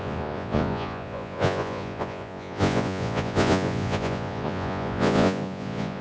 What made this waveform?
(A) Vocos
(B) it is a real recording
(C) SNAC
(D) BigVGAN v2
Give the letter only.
A